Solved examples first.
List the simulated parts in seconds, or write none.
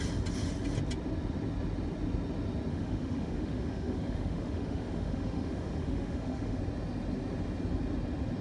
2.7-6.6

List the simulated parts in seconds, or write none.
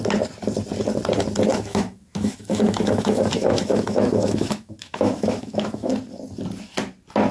1.5-5.9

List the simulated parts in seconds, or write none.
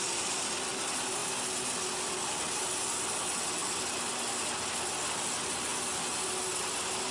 none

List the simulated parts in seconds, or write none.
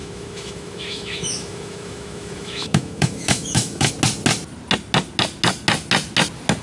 0.0-3.9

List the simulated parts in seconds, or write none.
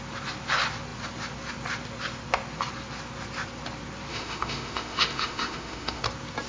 4.1-6.0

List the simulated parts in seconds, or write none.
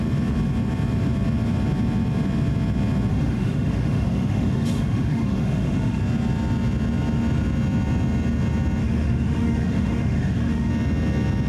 3.1-6.0; 8.8-10.7